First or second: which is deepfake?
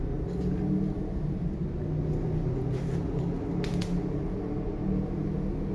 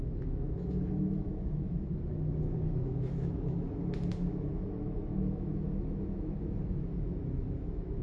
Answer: second